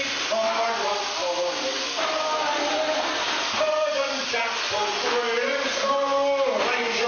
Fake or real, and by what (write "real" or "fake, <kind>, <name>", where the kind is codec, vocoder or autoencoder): real